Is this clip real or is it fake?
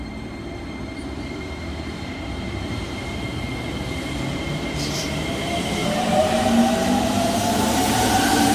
fake